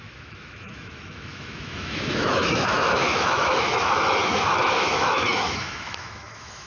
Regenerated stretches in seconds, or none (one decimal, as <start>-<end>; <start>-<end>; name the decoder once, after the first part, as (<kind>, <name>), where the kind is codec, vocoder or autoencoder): 0.0-6.7 (autoencoder, DAC-VAE)